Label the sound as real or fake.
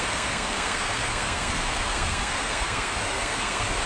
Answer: fake